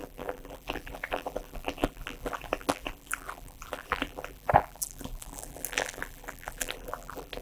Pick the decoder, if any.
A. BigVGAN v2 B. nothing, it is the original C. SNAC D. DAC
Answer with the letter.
A